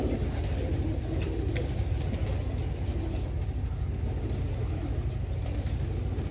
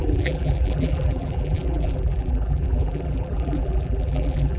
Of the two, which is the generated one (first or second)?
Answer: second